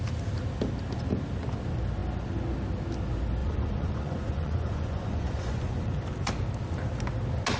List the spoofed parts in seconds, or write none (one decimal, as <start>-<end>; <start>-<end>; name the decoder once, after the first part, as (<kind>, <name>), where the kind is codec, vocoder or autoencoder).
3.4-5.9 (vocoder, Vocos)